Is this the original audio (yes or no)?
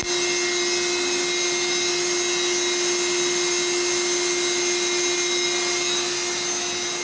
yes